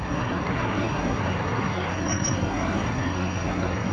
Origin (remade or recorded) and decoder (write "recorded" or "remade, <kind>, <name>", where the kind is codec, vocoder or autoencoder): remade, codec, SNAC